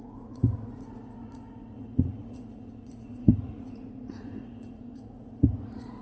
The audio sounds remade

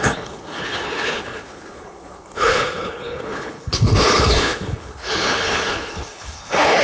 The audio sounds remade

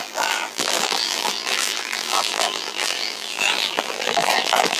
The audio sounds remade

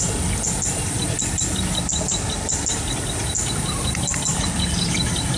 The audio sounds recorded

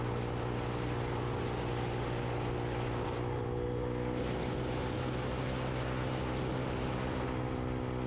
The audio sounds recorded